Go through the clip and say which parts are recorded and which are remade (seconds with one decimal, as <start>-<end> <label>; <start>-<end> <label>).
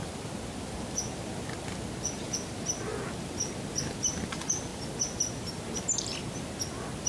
0.0-7.1 recorded